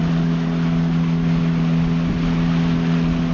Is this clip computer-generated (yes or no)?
no